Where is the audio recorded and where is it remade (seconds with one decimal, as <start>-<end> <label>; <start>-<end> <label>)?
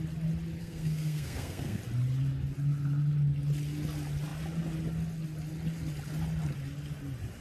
0.0-0.6 recorded; 0.6-1.8 remade; 1.8-7.4 recorded